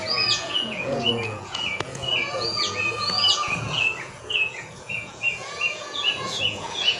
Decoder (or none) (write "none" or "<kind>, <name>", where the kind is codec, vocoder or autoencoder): vocoder, Vocos